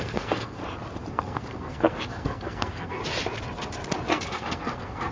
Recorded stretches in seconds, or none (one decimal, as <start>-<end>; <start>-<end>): 0.6-1.1; 3.0-4.1